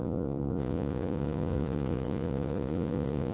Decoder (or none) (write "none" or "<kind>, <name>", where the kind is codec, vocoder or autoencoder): vocoder, Vocos